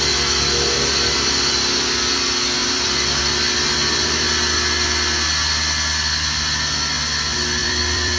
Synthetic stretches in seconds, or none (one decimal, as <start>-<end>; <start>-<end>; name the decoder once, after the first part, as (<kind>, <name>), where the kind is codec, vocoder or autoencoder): 2.6-3.2 (vocoder, BigVGAN v2); 7.6-8.2